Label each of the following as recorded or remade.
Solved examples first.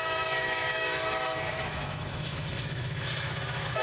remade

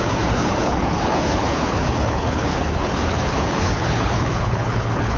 remade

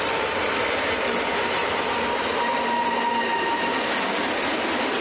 recorded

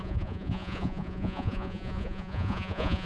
remade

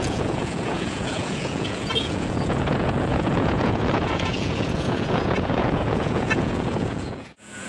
remade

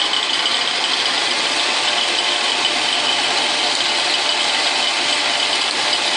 recorded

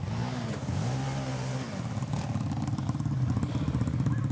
recorded